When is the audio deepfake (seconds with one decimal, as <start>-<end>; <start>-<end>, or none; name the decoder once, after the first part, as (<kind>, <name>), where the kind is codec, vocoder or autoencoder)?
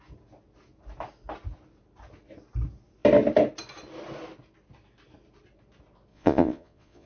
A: 6.1-7.1 (vocoder, Vocos)